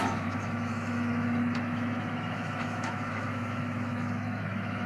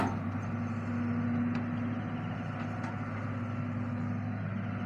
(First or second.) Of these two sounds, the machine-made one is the first